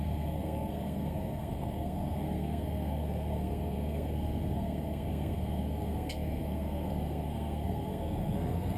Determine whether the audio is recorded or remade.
remade